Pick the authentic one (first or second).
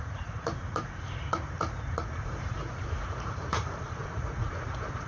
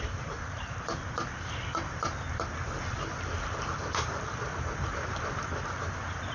second